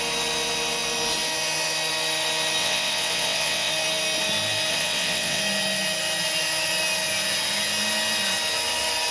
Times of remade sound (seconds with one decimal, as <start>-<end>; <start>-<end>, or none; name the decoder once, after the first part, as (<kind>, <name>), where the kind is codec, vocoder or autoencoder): 2.6-3.7 (vocoder, WaveNeXt); 4.7-5.4